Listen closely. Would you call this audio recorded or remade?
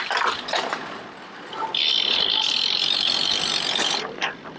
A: recorded